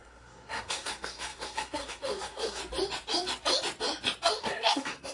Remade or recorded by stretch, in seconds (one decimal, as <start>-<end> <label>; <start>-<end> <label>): 0.0-2.6 remade; 2.6-4.4 recorded; 4.4-5.1 remade